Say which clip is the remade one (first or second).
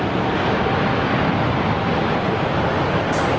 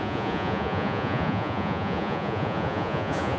second